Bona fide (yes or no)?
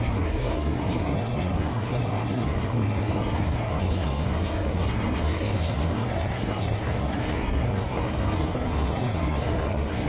no